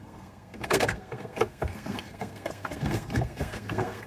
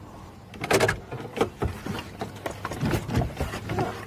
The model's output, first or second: first